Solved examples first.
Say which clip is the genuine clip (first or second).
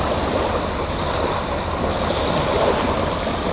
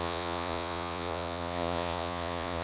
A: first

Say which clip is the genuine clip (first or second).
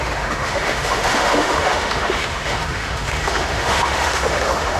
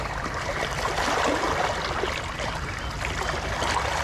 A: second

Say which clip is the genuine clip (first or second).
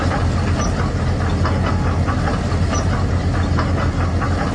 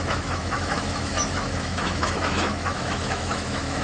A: first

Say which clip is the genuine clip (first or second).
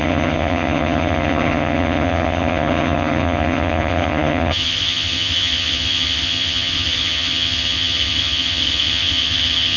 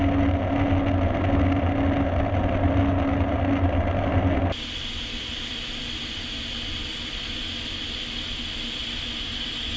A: second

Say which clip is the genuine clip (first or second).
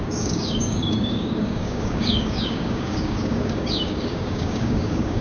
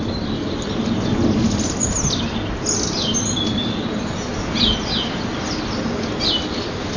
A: second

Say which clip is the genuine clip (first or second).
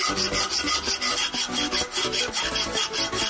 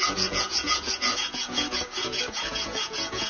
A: first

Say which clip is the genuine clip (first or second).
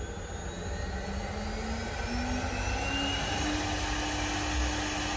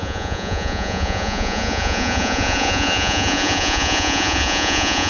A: first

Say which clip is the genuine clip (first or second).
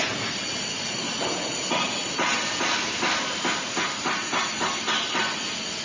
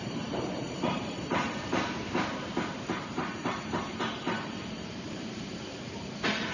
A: first